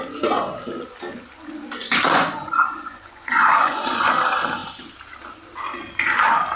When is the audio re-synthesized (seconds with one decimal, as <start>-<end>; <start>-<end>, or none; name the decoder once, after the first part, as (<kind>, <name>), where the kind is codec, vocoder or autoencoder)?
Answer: 1.8-4.1 (vocoder, Vocos)

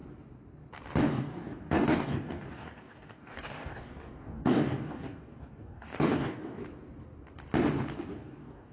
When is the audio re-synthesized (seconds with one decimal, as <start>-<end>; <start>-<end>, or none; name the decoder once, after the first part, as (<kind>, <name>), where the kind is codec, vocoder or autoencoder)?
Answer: 1.0-6.6 (codec, DAC); 8.1-8.7

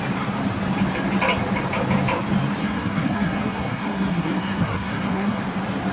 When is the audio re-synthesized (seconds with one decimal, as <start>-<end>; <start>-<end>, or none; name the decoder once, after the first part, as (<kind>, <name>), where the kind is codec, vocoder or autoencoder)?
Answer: 2.6-5.4 (codec, SNAC)